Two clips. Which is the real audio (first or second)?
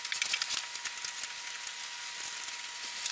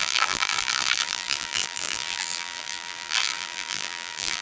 first